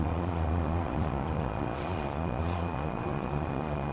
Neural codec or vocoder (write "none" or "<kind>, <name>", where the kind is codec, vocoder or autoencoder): vocoder, Vocos